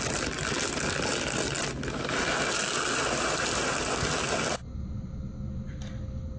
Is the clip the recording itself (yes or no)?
yes